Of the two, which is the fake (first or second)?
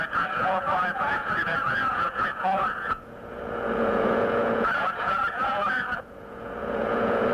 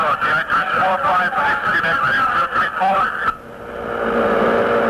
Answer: first